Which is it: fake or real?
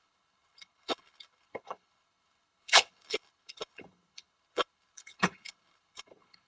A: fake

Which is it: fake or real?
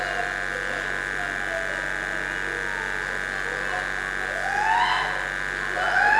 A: real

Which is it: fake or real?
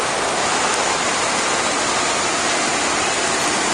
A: real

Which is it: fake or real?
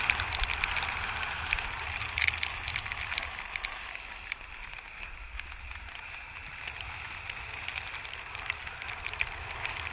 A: real